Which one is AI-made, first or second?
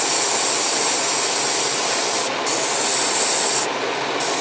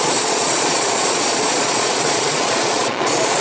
second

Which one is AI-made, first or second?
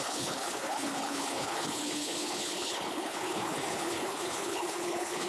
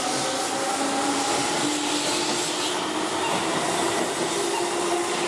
first